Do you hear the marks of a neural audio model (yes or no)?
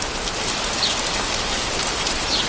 no